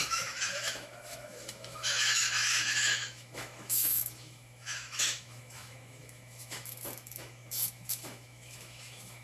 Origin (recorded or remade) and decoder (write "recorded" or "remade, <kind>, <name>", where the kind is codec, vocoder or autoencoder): remade, autoencoder, DAC-VAE